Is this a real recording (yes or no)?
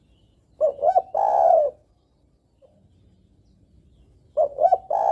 yes